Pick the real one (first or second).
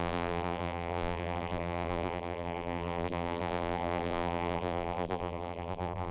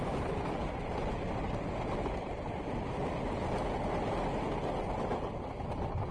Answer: second